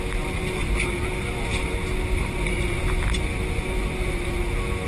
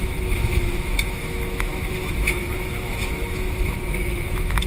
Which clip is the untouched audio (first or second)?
first